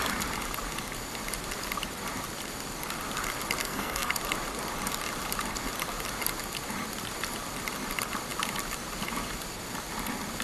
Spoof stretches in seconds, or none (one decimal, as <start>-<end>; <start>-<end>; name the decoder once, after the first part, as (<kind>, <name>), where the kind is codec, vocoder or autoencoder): 3.6-4.1 (codec, SNAC)